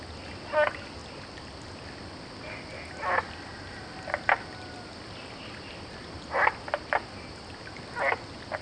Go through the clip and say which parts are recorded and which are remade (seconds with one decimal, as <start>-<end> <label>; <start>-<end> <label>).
0.0-8.6 recorded